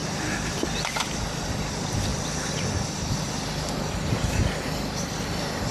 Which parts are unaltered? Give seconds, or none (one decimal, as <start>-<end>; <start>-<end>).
1.4-5.7